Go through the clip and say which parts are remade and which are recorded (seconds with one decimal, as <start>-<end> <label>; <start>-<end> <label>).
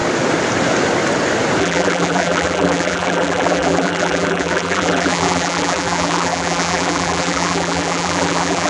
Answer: 0.0-1.6 recorded; 1.6-8.7 remade